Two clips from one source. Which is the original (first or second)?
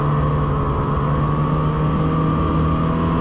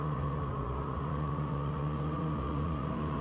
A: first